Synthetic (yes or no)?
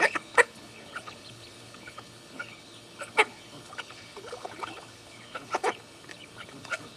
yes